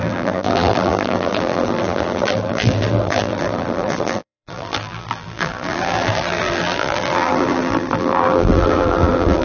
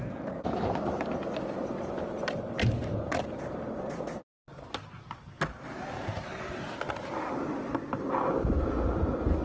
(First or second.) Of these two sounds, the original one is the second